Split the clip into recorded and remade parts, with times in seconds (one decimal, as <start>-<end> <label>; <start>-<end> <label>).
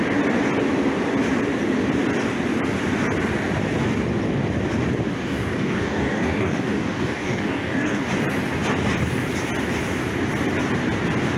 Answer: 0.0-5.1 recorded; 5.1-8.1 remade; 8.1-11.4 recorded